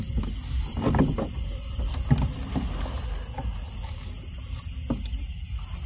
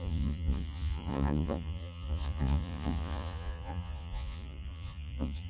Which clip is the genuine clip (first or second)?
first